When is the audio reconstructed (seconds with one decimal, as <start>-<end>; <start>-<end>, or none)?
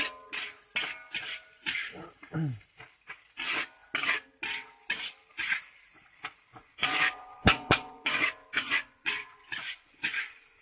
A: 6.5-10.6